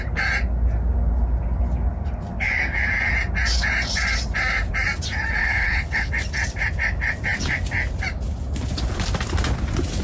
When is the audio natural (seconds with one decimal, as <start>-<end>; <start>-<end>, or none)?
0.0-5.4; 6.1-10.0